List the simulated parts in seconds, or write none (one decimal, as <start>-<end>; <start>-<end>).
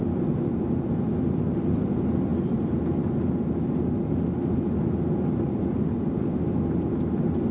none